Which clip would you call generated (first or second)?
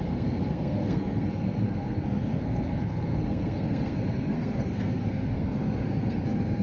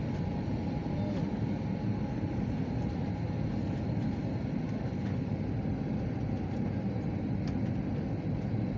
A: first